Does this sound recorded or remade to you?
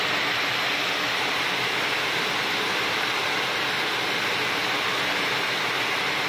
recorded